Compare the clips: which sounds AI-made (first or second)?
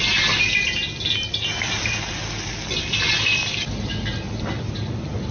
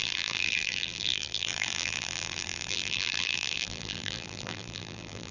second